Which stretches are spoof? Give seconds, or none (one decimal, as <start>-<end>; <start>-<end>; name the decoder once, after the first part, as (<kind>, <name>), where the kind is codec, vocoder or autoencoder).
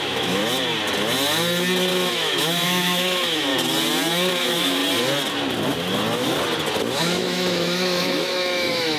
0.0-0.4 (autoencoder, DAC-VAE); 1.9-3.5; 4.3-4.8; 7.0-9.0